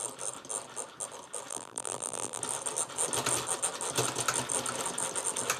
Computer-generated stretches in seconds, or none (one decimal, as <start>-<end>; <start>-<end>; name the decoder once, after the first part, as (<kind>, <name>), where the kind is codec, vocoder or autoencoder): 1.5-2.4 (vocoder, BigVGAN v2)